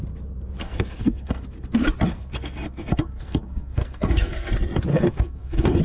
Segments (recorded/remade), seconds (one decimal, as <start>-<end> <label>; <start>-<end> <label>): 0.0-0.6 recorded; 0.6-1.4 remade; 1.4-2.1 recorded; 2.1-4.5 remade; 4.5-4.9 recorded; 4.9-5.8 remade